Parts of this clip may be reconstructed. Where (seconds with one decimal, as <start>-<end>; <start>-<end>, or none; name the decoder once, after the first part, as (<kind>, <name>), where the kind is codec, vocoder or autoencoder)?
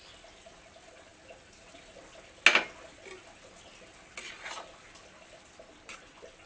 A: none